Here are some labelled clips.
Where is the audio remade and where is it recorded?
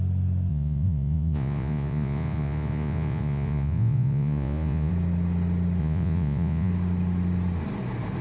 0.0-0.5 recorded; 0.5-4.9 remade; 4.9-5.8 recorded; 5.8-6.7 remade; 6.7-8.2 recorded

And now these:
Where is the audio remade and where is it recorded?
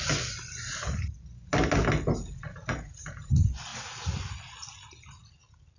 0.0-2.5 recorded; 2.5-3.1 remade; 3.1-5.8 recorded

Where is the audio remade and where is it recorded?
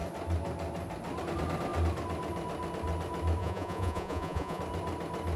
0.0-3.4 recorded; 3.4-4.6 remade; 4.6-5.4 recorded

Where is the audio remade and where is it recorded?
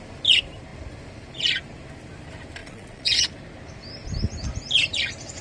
0.0-2.6 recorded; 2.6-3.3 remade; 3.3-5.4 recorded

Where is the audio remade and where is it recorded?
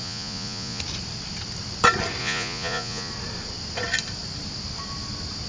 0.0-0.8 remade; 0.8-2.2 recorded; 2.2-3.1 remade; 3.1-5.5 recorded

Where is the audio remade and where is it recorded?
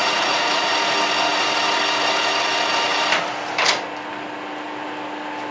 0.0-0.7 remade; 0.7-5.5 recorded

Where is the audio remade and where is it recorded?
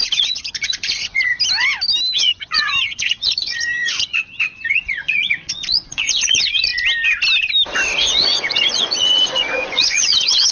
0.0-1.3 remade; 1.3-2.2 recorded; 2.2-6.7 remade; 6.7-8.0 recorded; 8.0-10.5 remade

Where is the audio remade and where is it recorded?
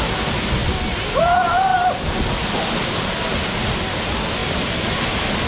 0.0-5.5 recorded